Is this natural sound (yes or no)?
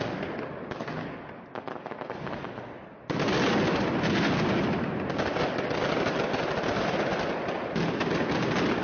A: yes